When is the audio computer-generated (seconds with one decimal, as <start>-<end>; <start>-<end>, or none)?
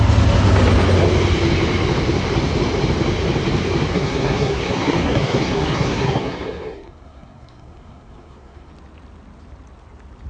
3.9-8.7